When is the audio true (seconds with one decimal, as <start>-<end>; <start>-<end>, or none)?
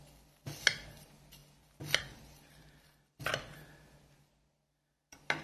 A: 0.0-5.4